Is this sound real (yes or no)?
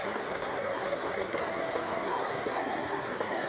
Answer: no